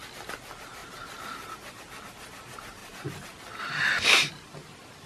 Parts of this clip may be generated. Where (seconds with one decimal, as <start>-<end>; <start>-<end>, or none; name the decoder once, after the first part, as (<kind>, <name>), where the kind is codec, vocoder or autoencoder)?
none